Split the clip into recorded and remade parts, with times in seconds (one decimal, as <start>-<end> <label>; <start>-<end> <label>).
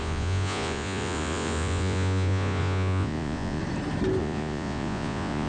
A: 0.0-3.6 remade; 3.6-4.2 recorded; 4.2-5.5 remade